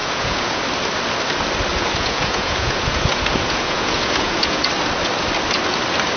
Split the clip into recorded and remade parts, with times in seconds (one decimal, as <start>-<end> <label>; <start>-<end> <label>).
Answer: 0.0-0.6 remade; 0.6-1.7 recorded; 1.7-4.7 remade; 4.7-6.2 recorded